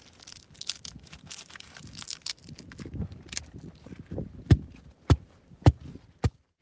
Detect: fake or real real